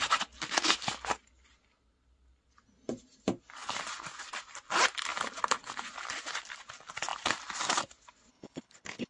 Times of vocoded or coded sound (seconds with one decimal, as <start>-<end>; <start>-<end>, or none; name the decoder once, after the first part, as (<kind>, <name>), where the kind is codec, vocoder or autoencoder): 8.3-9.1 (codec, HILCodec)